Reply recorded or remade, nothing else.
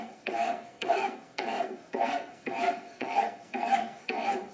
remade